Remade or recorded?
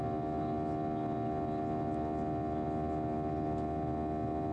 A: recorded